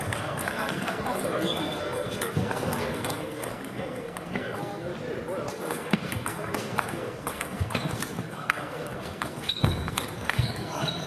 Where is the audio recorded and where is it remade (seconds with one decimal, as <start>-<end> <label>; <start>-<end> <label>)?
0.0-4.9 remade; 4.9-5.5 recorded; 5.5-11.1 remade